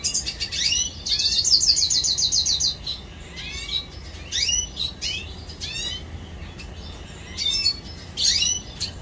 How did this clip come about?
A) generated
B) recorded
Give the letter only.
B